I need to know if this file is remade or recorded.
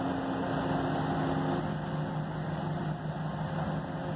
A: recorded